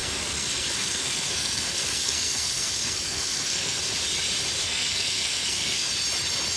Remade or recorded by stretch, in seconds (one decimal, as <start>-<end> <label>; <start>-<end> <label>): 0.0-3.8 remade; 3.8-4.6 recorded; 4.6-5.9 remade; 5.9-6.6 recorded